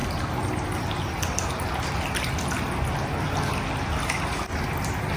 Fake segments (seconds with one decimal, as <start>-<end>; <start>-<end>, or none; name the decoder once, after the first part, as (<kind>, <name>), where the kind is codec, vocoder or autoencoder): none